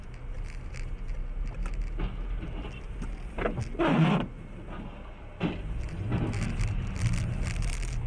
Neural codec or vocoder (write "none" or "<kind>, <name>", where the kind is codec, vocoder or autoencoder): none